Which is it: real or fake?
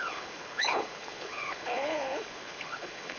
fake